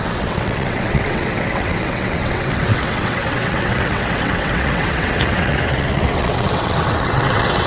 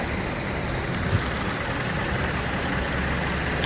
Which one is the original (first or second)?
second